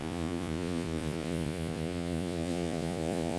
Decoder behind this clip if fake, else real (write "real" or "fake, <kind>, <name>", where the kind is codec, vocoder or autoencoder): fake, vocoder, Vocos